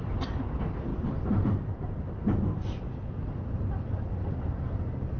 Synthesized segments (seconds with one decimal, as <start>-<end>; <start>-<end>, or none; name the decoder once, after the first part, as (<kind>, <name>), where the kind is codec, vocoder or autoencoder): 0.0-0.9 (vocoder, BigVGAN v2); 3.2-5.2

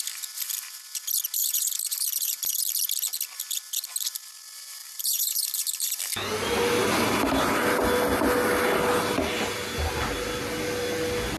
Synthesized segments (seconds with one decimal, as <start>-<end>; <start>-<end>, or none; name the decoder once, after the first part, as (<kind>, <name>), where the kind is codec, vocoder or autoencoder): 1.4-2.6 (vocoder, BigVGAN v2); 4.8-6.0

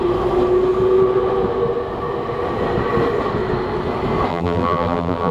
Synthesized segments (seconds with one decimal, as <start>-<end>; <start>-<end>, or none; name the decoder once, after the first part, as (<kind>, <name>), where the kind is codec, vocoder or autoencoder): 4.3-5.3 (vocoder, BigVGAN v2)

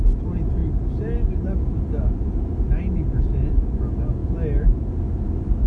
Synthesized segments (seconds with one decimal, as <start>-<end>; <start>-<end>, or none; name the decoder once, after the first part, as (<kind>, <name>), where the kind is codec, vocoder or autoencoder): none

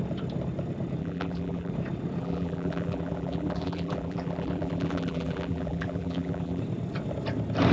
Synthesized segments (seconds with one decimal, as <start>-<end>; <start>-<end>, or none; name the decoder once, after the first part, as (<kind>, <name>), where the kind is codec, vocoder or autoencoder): 1.0-1.7 (vocoder, BigVGAN v2); 2.2-6.6